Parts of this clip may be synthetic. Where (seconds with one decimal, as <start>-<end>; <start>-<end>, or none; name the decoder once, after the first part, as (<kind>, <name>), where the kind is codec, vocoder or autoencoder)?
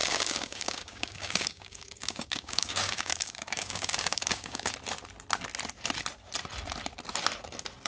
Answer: 0.0-4.7 (codec, DAC)